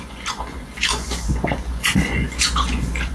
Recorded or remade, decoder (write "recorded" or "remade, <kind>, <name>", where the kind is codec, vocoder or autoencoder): remade, vocoder, Vocos